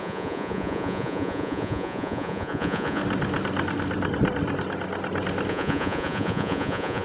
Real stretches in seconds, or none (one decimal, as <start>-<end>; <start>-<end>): 3.0-5.5